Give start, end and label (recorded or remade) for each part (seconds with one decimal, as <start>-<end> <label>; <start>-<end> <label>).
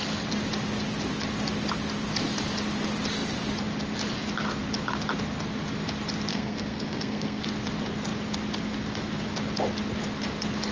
0.0-6.3 recorded; 6.3-7.4 remade; 7.4-10.7 recorded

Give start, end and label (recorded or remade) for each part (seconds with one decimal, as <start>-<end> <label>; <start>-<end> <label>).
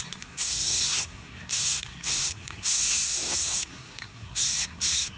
0.0-5.2 remade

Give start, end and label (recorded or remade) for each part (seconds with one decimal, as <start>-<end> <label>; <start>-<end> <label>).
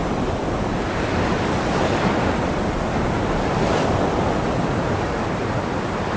0.0-6.2 recorded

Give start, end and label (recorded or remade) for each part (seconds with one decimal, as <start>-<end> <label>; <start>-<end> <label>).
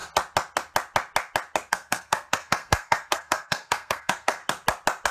0.0-1.7 recorded; 1.7-4.4 remade; 4.4-5.1 recorded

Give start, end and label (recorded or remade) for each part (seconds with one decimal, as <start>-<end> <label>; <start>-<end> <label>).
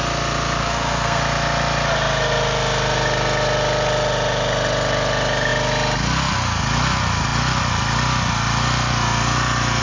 0.0-0.6 recorded; 0.6-1.2 remade; 1.2-9.8 recorded